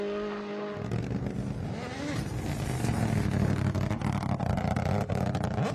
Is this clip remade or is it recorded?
recorded